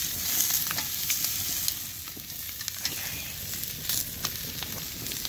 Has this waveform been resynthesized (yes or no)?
no